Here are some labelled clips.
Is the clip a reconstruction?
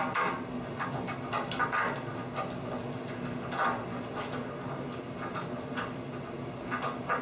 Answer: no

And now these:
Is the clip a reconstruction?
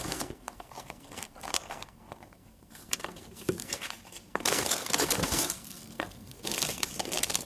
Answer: yes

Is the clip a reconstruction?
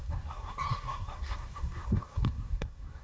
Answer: yes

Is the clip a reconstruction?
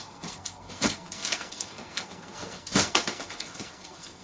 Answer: yes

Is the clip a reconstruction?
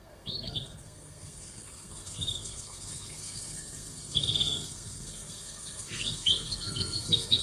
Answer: yes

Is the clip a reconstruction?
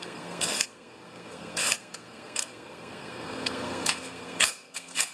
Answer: yes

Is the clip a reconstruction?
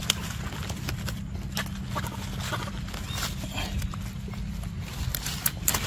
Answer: no